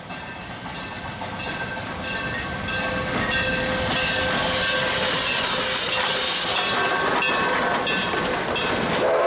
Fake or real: real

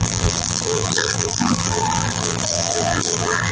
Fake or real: fake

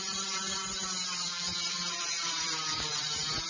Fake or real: fake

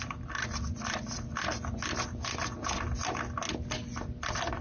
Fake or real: real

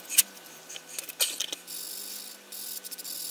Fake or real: real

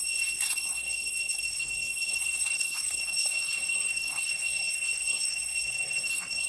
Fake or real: fake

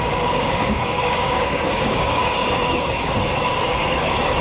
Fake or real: fake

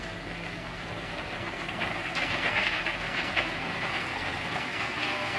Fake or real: fake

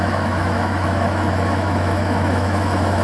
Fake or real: fake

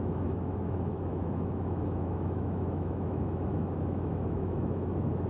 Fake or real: fake